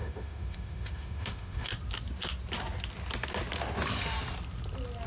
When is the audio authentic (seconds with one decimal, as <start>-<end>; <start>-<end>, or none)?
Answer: 1.7-5.1